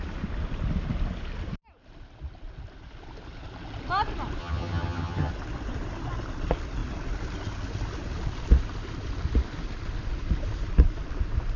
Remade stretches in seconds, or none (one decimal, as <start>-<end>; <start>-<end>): 4.4-5.3